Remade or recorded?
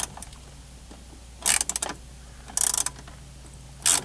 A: recorded